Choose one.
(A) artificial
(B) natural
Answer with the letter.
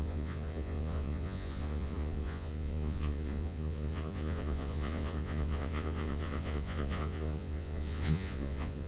A